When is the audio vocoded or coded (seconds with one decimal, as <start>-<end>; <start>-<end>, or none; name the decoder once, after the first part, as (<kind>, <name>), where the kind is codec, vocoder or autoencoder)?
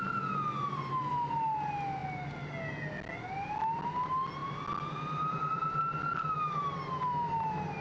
4.4-5.8 (vocoder, BigVGAN v2)